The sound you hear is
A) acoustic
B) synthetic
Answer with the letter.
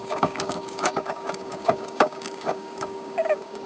B